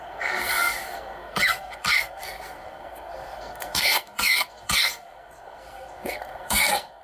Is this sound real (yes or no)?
no